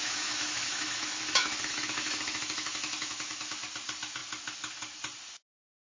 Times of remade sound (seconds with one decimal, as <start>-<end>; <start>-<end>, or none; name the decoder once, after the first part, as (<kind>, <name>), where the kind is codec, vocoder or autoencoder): 0.0-3.6 (autoencoder, DAC-VAE)